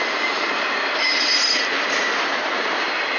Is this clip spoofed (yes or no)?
yes